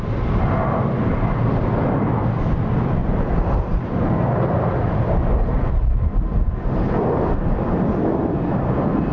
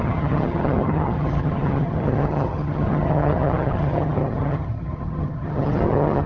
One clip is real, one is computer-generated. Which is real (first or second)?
first